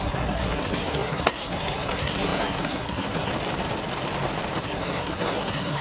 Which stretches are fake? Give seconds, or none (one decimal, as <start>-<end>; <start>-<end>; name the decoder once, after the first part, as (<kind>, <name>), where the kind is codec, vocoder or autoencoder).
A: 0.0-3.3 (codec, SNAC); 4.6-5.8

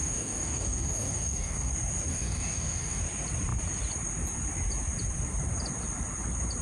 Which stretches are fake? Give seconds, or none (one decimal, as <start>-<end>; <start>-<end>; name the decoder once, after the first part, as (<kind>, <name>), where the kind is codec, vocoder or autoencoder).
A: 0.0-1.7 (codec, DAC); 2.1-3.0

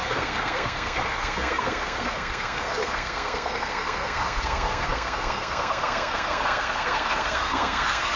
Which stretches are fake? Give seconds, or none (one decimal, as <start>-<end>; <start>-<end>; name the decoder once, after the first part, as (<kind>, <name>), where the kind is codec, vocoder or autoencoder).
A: 0.0-8.2 (codec, SNAC)

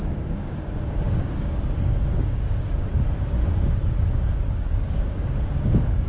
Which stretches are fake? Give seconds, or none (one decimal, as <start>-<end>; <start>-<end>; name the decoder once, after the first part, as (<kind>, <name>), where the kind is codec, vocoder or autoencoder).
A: 0.0-3.4 (codec, DAC); 4.0-6.1

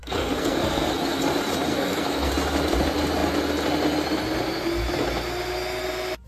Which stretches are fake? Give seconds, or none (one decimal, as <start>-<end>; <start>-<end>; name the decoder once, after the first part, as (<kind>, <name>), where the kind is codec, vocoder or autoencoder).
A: 0.0-1.2 (codec, SNAC); 1.7-2.3

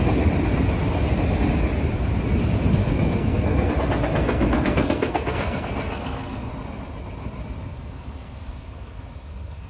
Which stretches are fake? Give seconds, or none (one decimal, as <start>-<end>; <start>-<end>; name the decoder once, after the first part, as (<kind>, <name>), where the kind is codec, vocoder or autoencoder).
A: 2.8-3.7 (codec, SNAC); 4.2-6.5; 7.7-9.7

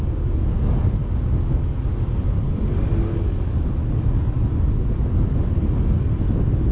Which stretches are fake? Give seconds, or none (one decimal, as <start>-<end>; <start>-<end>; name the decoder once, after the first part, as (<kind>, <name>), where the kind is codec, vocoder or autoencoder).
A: none